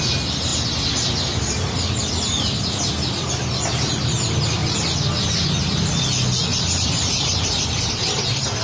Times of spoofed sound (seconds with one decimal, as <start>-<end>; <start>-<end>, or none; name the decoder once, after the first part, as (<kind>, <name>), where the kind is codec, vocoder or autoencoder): 6.5-8.2 (vocoder, BigVGAN v2)